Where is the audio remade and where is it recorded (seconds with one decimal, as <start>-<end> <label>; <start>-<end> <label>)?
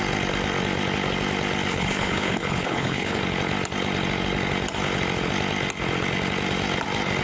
0.0-1.7 recorded; 1.7-3.2 remade; 3.2-7.2 recorded